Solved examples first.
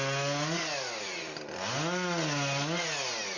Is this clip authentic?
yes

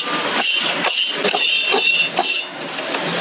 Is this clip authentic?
yes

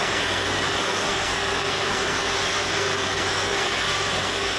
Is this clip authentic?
no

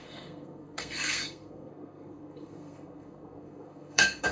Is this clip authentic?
no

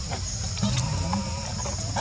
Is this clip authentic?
yes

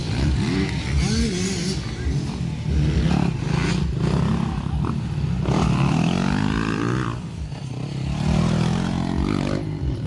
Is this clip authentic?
yes